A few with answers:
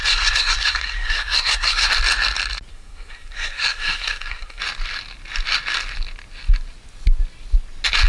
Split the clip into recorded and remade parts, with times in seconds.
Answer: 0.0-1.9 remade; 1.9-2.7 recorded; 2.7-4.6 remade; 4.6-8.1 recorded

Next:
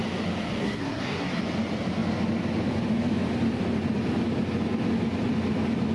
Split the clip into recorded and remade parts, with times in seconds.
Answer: 0.0-0.6 recorded; 0.6-1.4 remade; 1.4-5.9 recorded

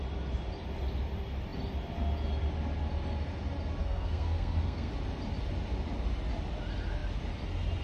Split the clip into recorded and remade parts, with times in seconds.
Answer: 0.0-3.8 recorded; 3.8-4.9 remade; 4.9-7.8 recorded